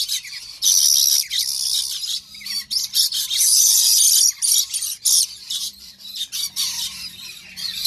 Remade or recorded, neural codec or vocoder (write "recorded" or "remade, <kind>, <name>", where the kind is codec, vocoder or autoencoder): remade, vocoder, BigVGAN v2